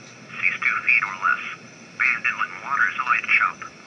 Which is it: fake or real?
real